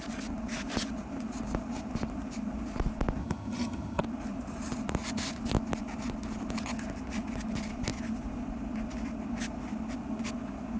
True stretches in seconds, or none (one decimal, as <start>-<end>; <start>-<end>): 0.0-3.2; 4.0-10.8